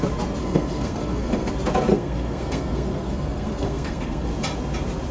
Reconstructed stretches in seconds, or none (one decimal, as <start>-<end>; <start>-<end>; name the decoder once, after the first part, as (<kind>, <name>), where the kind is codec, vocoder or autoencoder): 0.4-1.5 (codec, SNAC); 1.9-4.3